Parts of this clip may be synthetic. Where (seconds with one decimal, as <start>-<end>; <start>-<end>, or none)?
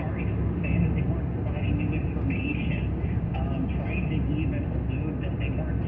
none